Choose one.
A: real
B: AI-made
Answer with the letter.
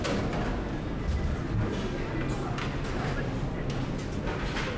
A